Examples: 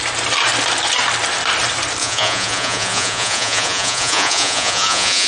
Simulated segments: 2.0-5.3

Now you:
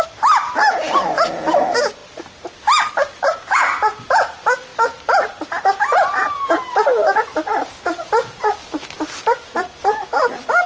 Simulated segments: none

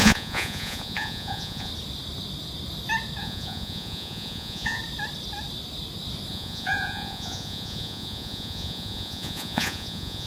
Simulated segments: 0.0-1.7; 3.2-4.8; 6.3-10.3

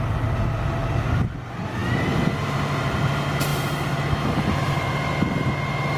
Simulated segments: none

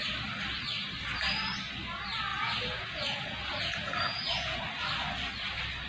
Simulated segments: 2.3-4.6

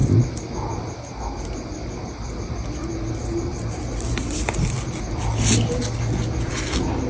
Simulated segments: none

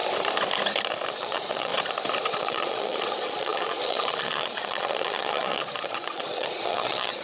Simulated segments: 1.1-1.7; 2.4-7.2

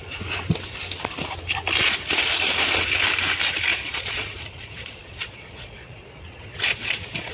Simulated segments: 3.7-7.3